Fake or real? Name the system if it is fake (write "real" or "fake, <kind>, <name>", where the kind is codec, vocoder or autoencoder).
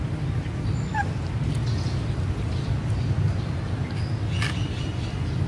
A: real